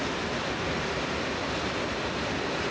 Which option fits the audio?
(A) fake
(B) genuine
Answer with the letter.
B